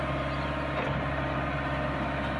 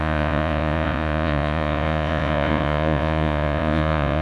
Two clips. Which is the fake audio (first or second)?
second